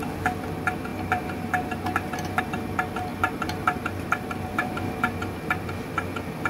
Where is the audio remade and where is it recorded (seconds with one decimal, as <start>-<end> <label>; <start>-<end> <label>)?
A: 0.0-0.9 recorded; 0.9-2.4 remade; 2.4-3.1 recorded; 3.1-4.9 remade; 4.9-6.5 recorded